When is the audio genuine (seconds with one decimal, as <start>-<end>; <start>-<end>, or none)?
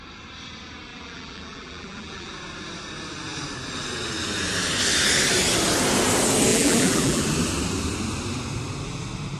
0.0-0.9; 2.3-6.5; 7.2-9.4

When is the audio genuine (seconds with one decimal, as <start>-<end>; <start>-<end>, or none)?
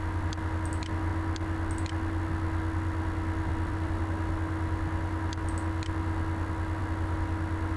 0.0-3.5; 4.0-7.8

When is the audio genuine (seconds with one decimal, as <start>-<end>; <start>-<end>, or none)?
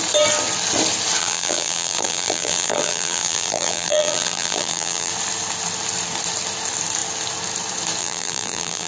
0.0-1.2; 5.1-8.0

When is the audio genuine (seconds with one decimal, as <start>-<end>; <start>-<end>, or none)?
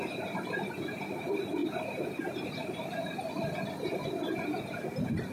0.0-1.6; 3.3-5.3